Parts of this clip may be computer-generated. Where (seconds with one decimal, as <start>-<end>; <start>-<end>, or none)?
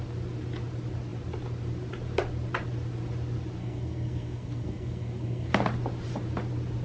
3.6-5.5